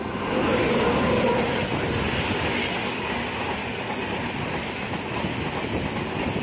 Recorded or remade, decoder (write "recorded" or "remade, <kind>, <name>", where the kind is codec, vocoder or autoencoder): recorded